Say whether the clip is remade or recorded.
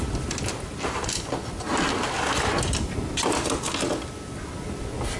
recorded